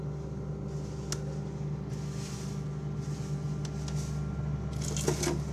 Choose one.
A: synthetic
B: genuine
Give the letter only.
B